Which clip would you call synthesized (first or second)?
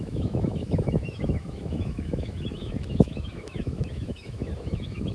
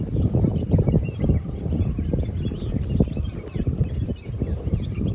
first